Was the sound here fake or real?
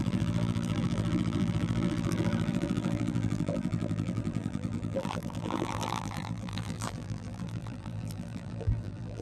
fake